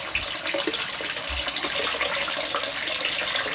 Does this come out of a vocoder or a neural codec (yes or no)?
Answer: no